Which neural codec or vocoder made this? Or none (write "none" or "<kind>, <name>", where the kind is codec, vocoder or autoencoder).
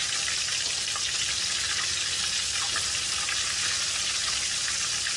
none